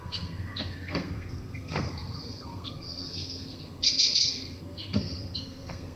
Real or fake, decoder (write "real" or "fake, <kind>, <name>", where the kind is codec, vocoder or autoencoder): fake, codec, SNAC